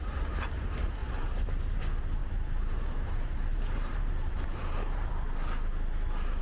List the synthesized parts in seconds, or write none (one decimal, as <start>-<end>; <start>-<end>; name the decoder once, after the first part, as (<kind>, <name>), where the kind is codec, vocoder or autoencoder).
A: 1.0-1.8 (vocoder, BigVGAN v2); 2.2-5.1